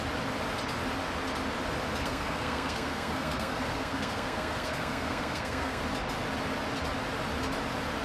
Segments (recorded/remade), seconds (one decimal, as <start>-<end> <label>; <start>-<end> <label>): 0.0-2.0 recorded; 2.0-5.8 remade; 5.8-8.0 recorded